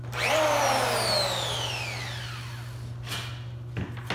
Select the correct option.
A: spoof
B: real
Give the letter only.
B